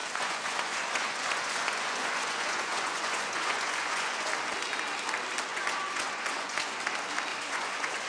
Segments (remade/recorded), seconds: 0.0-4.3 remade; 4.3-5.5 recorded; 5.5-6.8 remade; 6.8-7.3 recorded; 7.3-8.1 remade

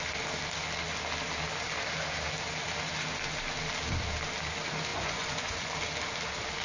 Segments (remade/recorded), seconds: 0.0-4.9 recorded; 4.9-5.7 remade; 5.7-6.6 recorded

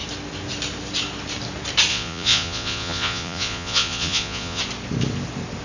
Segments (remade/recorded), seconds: 0.0-1.9 recorded; 1.9-4.6 remade; 4.6-5.6 recorded

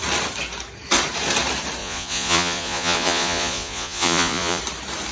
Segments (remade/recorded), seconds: 0.0-1.8 recorded; 1.8-4.6 remade; 4.6-5.1 recorded

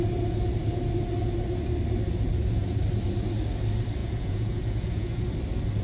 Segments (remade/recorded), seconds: 0.0-4.0 recorded; 4.0-5.2 remade; 5.2-5.8 recorded